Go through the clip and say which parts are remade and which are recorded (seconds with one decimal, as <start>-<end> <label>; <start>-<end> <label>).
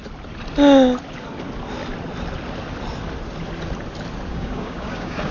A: 0.0-4.3 recorded; 4.3-5.3 remade